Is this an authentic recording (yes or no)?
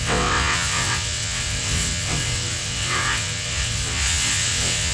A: no